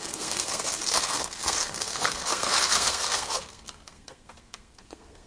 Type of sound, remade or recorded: remade